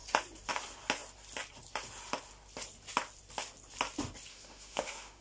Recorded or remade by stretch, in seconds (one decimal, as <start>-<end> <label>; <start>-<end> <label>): 0.0-4.3 recorded; 4.3-5.2 remade